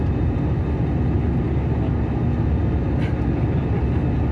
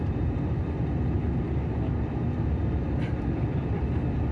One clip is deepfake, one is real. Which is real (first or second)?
first